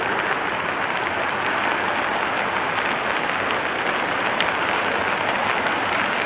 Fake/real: real